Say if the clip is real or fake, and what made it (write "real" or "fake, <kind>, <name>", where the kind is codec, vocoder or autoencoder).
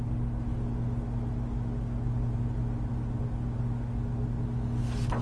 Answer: real